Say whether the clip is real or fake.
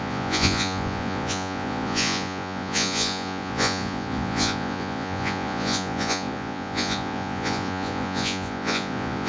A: fake